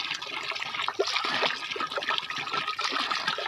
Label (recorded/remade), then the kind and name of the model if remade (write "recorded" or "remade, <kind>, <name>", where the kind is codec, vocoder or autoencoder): recorded